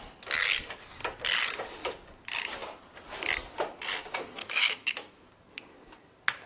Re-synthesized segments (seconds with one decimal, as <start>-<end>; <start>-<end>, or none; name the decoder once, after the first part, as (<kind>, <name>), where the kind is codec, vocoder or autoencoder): 4.4-5.3 (autoencoder, DAC-VAE)